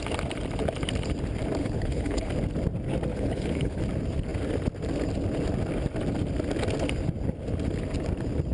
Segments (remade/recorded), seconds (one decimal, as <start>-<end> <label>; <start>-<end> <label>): 0.0-1.6 recorded; 1.6-2.3 remade; 2.3-3.1 recorded; 3.1-3.8 remade; 3.8-8.5 recorded

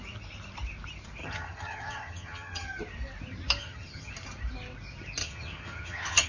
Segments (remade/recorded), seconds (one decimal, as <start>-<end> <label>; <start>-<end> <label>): 0.0-1.2 recorded; 1.2-2.8 remade; 2.8-3.6 recorded; 3.6-4.1 remade; 4.1-5.2 recorded; 5.2-6.3 remade

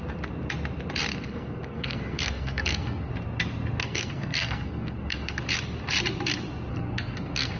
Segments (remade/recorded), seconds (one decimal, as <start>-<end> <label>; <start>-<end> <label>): 0.0-1.1 recorded; 1.1-3.1 remade; 3.1-3.8 recorded; 3.8-5.4 remade; 5.4-6.7 recorded; 6.7-7.6 remade

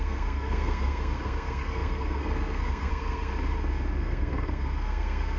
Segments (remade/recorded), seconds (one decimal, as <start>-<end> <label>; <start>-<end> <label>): 0.0-3.3 remade; 3.3-4.0 recorded; 4.0-5.4 remade

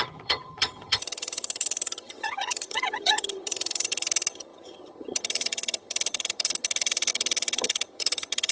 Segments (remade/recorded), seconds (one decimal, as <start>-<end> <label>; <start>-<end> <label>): 0.0-8.5 remade